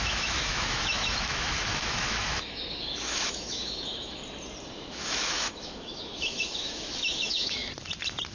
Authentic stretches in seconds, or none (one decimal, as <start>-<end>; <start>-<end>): 4.2-4.7; 7.6-8.3

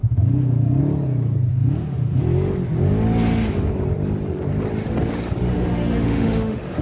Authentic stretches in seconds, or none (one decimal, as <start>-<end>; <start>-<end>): 0.8-1.5; 2.2-5.5

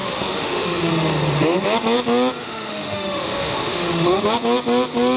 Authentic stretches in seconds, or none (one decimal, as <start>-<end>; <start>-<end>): 0.9-2.4; 4.2-5.2

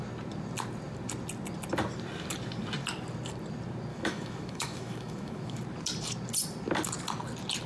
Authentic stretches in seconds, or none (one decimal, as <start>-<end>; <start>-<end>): 0.0-3.9; 5.6-7.7

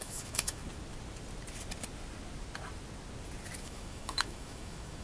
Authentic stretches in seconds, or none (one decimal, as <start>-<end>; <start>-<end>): 0.6-3.6

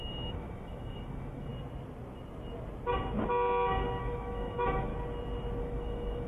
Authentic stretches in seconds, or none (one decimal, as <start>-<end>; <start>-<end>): 1.5-4.0; 4.9-5.6

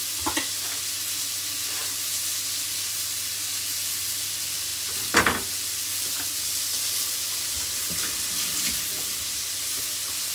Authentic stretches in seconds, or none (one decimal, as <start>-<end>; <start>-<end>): 0.0-10.3

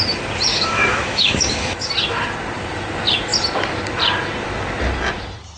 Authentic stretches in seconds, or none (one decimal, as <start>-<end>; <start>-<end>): 0.0-0.5; 1.9-5.6